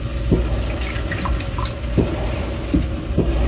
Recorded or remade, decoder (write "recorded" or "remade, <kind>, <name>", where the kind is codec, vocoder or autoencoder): recorded